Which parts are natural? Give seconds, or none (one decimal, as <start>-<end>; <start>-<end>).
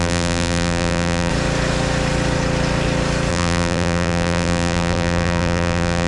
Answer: 1.3-3.3